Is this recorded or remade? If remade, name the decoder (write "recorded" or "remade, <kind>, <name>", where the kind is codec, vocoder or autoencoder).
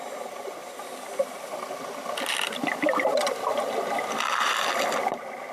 remade, vocoder, BigVGAN v2